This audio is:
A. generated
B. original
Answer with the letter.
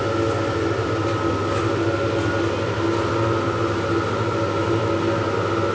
B